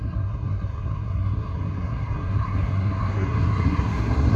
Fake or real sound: fake